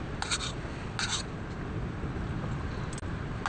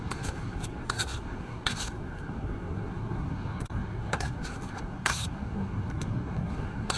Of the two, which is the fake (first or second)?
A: second